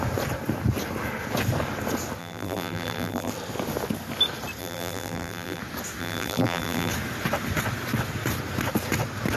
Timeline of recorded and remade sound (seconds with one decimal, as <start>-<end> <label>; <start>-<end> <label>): 0.0-2.2 recorded; 2.2-3.3 remade; 3.3-4.6 recorded; 4.6-5.6 remade; 5.6-6.0 recorded; 6.0-6.9 remade; 6.9-9.4 recorded